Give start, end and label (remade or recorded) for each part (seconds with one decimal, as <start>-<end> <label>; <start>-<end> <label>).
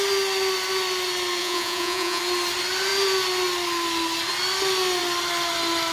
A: 0.0-1.4 recorded; 1.4-2.2 remade; 2.2-5.9 recorded